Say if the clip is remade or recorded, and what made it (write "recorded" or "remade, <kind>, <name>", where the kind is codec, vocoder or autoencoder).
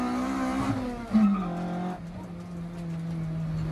recorded